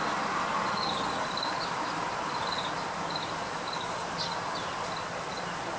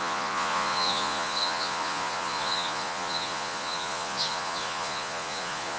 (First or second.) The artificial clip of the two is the second